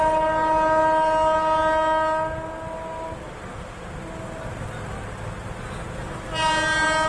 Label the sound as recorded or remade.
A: recorded